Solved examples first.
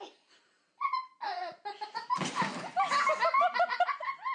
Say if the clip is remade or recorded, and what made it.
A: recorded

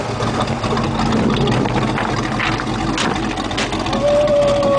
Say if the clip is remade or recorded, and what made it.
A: recorded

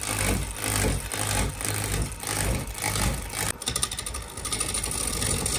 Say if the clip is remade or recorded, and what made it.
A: recorded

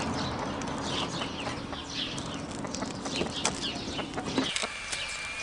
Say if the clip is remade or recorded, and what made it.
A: recorded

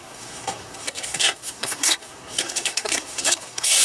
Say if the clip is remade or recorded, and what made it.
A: remade, codec, SNAC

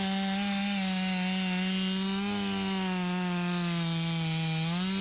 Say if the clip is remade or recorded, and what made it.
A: recorded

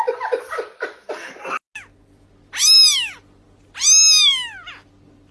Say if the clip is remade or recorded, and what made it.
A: recorded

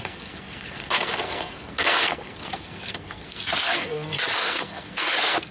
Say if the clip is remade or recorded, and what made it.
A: remade, codec, SNAC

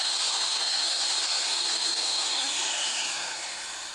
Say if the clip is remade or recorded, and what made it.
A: remade, codec, SNAC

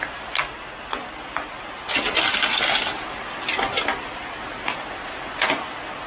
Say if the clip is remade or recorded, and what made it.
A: recorded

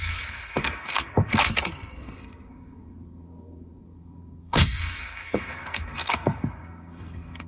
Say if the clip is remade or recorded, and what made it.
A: remade, codec, SNAC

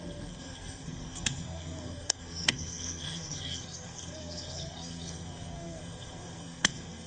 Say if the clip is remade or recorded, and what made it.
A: remade, codec, SNAC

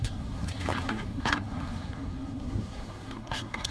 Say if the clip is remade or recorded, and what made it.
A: remade, codec, SNAC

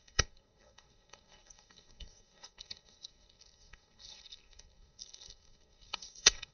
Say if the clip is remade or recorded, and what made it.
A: remade, codec, SNAC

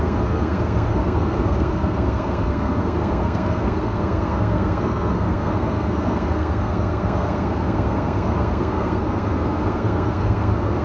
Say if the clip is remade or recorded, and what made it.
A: remade, codec, SNAC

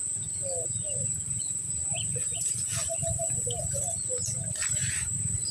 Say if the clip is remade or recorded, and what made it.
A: recorded